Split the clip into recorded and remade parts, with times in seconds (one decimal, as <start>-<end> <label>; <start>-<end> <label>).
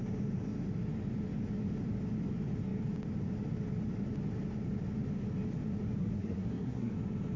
0.0-6.0 recorded; 6.0-6.9 remade; 6.9-7.4 recorded